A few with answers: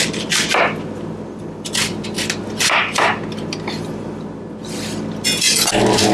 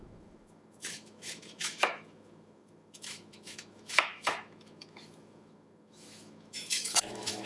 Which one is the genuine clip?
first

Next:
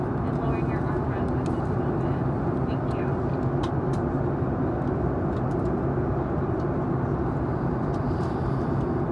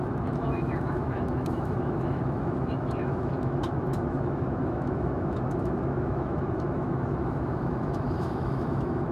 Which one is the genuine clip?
first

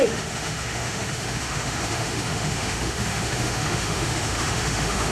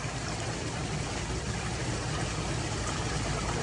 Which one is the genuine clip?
second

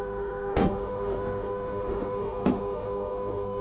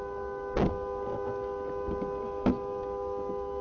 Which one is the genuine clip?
second